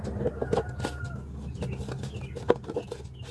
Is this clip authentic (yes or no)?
yes